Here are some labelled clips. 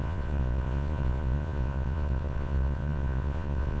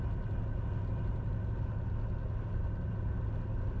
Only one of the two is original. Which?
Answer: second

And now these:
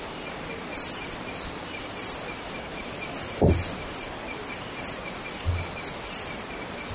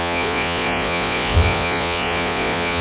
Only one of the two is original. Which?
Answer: first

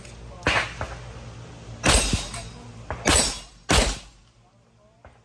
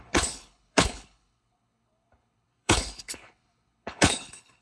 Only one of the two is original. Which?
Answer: first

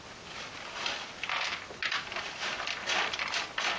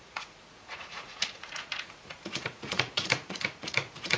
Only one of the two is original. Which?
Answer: first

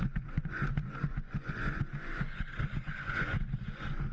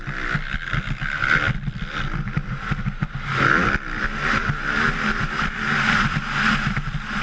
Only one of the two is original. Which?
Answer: second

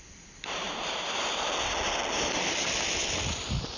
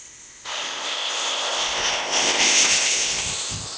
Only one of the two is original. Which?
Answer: first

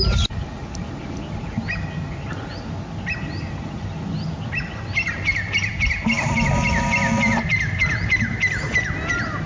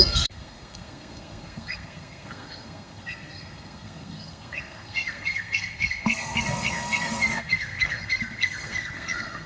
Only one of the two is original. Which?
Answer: first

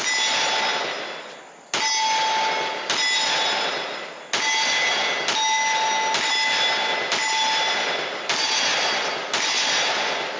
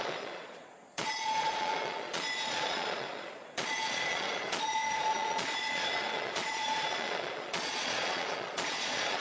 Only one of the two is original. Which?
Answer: first